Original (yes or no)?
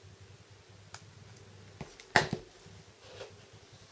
yes